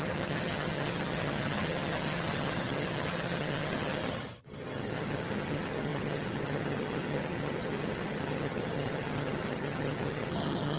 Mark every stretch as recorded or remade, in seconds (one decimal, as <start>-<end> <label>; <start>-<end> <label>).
0.0-10.8 remade